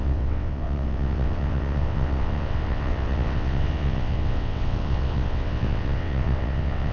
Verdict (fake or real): fake